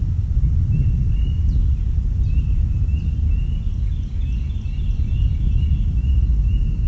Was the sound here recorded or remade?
recorded